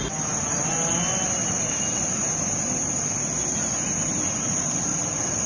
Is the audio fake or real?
real